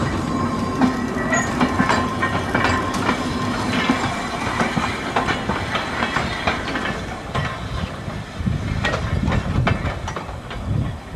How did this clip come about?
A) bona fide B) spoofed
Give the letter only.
B